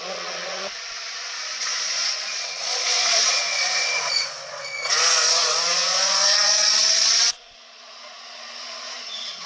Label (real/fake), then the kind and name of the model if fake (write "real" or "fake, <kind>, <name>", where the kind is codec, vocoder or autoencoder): fake, vocoder, Vocos